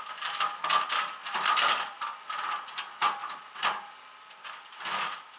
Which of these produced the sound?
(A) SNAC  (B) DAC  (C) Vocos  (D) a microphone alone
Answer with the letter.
D